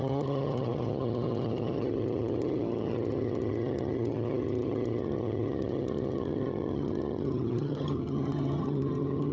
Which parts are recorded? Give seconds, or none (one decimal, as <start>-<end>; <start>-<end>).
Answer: none